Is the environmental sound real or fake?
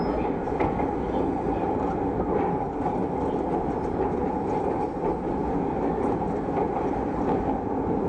real